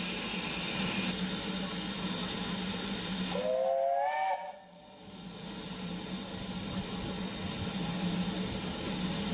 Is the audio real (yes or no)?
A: yes